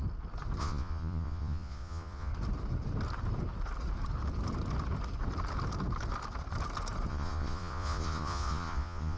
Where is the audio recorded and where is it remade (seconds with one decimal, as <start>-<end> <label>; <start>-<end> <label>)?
0.0-0.6 recorded; 0.6-2.3 remade; 2.3-7.1 recorded; 7.1-9.2 remade